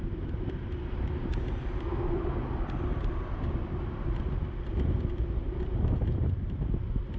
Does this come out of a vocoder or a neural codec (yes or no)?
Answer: yes